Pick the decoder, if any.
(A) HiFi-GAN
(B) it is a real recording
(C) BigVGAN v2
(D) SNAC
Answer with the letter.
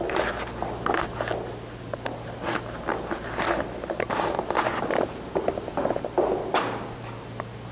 B